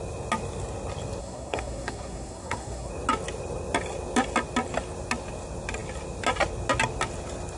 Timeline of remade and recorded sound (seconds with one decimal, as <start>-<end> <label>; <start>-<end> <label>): 0.0-1.2 recorded; 1.2-2.9 remade; 2.9-7.6 recorded